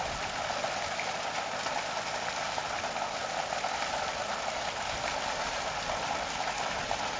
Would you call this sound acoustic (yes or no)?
yes